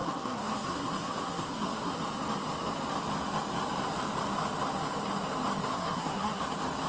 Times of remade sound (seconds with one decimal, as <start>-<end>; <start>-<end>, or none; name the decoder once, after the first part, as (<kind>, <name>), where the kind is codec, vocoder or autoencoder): 0.0-1.9 (codec, SNAC); 5.7-6.4